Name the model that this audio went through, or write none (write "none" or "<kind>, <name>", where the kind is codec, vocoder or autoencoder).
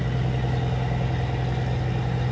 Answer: none